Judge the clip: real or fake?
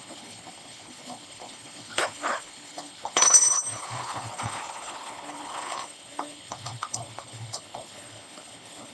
fake